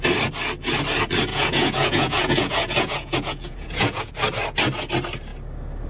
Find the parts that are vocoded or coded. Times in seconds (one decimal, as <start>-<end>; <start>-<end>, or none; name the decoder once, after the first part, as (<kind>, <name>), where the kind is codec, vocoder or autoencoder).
1.3-4.1 (vocoder, Vocos)

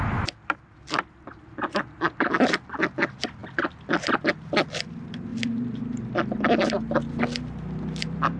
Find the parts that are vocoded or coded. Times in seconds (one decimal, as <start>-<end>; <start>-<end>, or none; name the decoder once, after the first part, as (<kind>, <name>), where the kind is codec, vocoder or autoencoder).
5.3-7.2 (vocoder, BigVGAN v2)

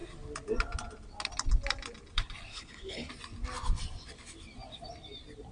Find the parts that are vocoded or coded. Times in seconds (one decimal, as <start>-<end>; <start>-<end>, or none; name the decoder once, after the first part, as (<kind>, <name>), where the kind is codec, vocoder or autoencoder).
2.5-3.1 (codec, HILCodec)

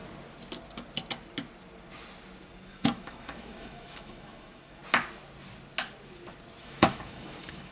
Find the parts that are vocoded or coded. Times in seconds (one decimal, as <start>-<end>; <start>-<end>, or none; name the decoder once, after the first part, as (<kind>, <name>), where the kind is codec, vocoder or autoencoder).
2.7-4.8 (autoencoder, DAC-VAE); 6.6-7.7

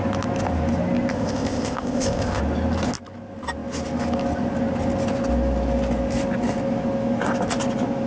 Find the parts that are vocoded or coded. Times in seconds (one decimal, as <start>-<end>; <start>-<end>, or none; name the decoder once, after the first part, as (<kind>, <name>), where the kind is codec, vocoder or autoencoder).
1.1-2.4 (codec, ZipCodec)